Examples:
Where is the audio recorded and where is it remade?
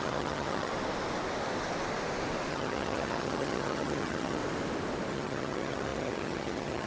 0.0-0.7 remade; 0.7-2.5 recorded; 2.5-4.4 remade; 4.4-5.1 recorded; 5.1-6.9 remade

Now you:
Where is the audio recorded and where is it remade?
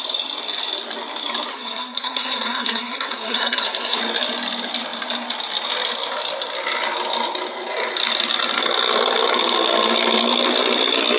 0.0-1.5 recorded; 1.5-4.0 remade; 4.0-11.2 recorded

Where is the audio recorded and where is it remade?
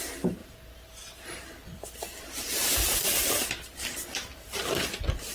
0.0-5.3 recorded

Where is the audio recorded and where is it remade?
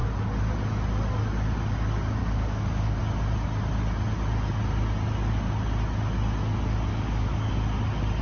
0.0-2.2 recorded; 2.2-3.0 remade; 3.0-6.9 recorded; 6.9-7.5 remade; 7.5-8.2 recorded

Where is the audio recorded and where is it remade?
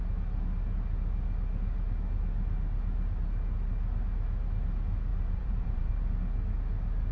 0.0-5.1 recorded; 5.1-5.9 remade; 5.9-7.1 recorded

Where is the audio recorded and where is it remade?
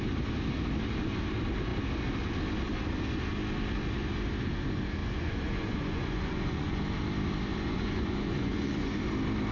0.0-5.0 recorded; 5.0-6.8 remade; 6.8-7.5 recorded; 7.5-9.0 remade; 9.0-9.5 recorded